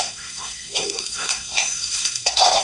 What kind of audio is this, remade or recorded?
remade